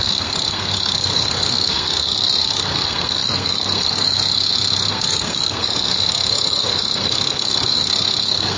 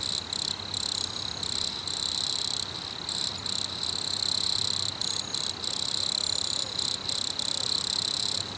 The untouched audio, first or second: second